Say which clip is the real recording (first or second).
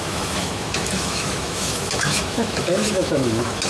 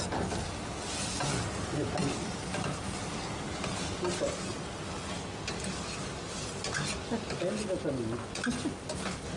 second